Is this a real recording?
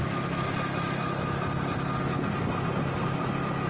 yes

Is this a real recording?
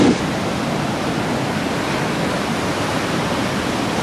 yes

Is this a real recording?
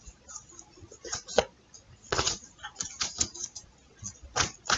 no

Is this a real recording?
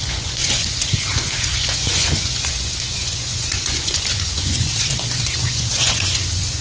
no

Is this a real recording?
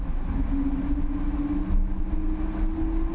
yes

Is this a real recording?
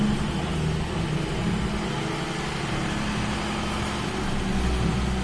yes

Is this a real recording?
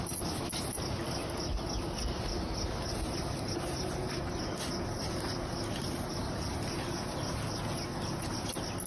yes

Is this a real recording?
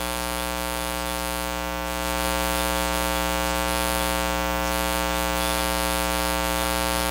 yes